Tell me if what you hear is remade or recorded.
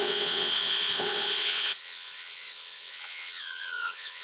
remade